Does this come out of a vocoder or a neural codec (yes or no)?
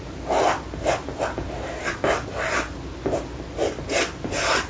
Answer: no